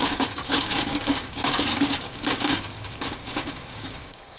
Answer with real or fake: fake